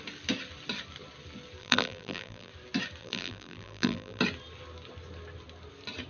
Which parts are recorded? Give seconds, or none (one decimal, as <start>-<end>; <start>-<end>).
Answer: 0.0-1.6; 2.5-3.0; 4.2-6.1